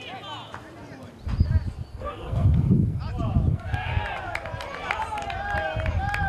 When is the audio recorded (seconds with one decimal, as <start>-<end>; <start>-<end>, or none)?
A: 0.0-1.9; 3.0-3.5; 4.0-6.3